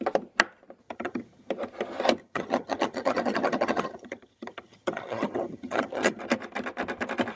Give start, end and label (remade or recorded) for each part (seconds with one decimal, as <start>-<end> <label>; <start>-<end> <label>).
0.0-0.8 recorded; 0.8-1.5 remade; 1.5-2.2 recorded; 2.2-6.2 remade; 6.2-7.4 recorded